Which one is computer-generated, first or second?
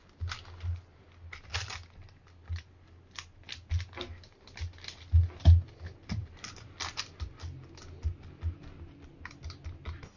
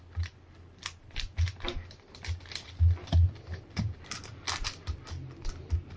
second